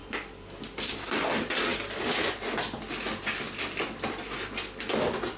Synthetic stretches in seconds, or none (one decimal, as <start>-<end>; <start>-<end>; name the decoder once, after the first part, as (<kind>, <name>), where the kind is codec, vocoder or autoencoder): none